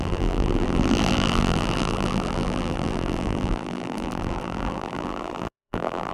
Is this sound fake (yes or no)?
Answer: yes